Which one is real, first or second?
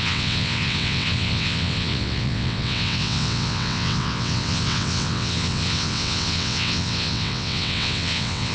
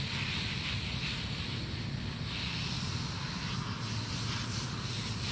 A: second